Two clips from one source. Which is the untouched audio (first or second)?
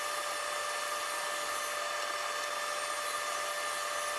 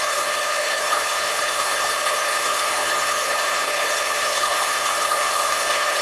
first